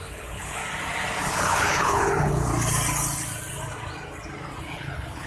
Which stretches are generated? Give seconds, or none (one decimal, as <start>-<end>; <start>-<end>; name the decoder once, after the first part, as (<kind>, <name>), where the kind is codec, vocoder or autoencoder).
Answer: 0.0-0.6 (codec, HILCodec); 1.2-2.5; 4.6-5.3